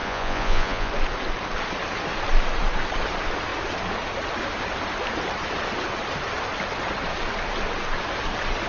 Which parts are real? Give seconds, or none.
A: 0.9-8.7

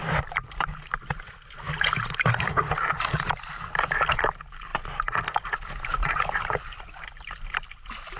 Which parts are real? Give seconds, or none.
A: 0.0-8.2

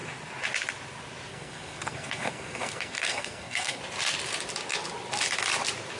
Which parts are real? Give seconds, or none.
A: 0.0-1.3; 3.8-6.0

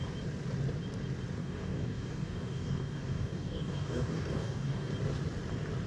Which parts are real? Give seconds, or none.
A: 0.0-1.4; 4.9-5.9

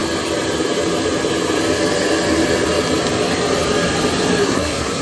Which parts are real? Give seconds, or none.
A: 0.0-4.4

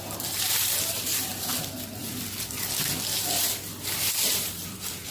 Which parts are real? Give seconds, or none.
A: 1.3-4.1

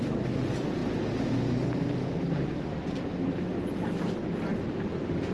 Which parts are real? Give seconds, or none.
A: 0.0-5.3